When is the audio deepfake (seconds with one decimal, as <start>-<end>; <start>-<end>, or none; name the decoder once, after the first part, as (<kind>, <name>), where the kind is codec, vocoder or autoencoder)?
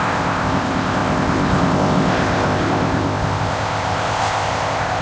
0.0-5.0 (codec, ZipCodec)